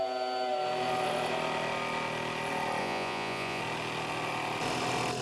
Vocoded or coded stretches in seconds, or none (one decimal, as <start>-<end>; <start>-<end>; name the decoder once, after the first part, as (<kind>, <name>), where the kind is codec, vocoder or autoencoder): 2.8-3.6 (vocoder, Vocos)